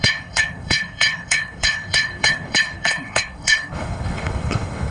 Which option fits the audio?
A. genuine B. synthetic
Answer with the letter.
B